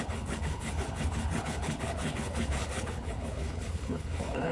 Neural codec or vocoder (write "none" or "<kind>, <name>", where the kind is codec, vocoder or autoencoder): codec, HILCodec